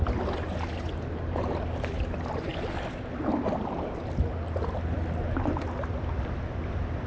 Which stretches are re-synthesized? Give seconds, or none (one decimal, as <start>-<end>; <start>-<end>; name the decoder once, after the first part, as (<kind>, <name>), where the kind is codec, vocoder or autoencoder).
none